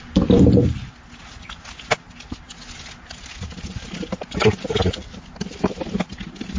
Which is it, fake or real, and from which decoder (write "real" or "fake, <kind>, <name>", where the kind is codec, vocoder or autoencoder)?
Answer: real